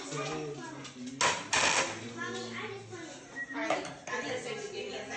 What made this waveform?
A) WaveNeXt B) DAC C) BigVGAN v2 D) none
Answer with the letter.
D